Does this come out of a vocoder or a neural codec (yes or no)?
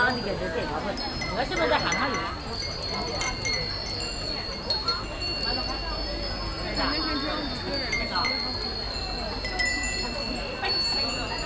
no